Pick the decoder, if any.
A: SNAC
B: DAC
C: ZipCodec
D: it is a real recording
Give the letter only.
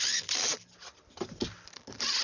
D